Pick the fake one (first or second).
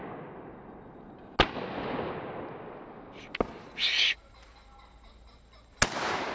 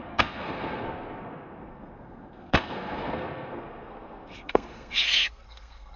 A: second